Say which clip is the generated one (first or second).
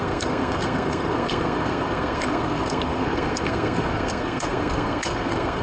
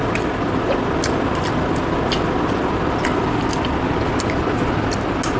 first